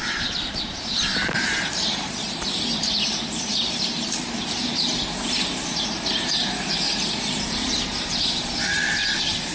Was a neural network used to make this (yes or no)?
yes